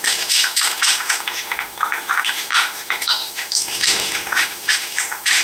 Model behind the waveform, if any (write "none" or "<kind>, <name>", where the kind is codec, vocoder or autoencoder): autoencoder, DAC-VAE